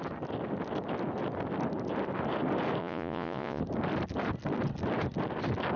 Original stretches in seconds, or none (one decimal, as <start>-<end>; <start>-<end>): 0.0-2.8; 3.6-5.8